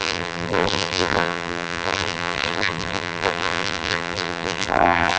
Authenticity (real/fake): fake